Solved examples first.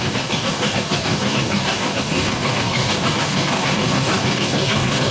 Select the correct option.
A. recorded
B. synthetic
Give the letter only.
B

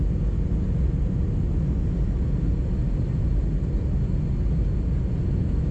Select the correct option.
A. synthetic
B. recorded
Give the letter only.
B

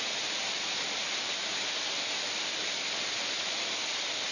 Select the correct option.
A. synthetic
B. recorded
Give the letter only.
B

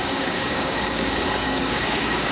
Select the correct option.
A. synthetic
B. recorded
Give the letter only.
A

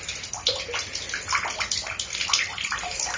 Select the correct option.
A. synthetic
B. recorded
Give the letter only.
B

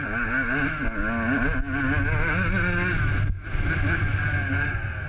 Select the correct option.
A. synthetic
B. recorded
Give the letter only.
B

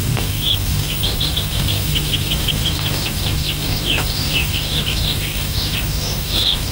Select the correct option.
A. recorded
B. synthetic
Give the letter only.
B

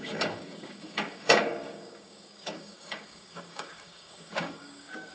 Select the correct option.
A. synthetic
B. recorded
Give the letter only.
A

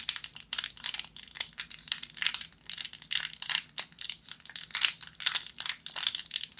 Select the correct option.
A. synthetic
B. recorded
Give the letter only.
B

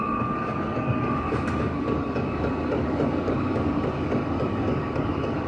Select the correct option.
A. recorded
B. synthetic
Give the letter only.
B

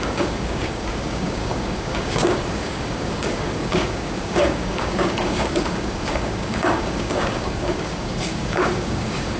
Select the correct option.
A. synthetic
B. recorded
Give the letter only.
A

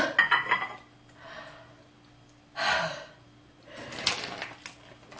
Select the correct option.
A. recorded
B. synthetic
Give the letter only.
A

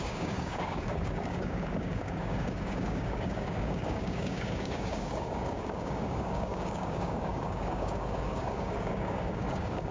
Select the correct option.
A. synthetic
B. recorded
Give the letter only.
A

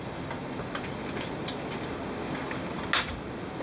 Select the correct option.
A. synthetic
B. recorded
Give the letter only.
B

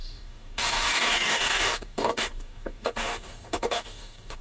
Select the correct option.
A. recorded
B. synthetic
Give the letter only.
B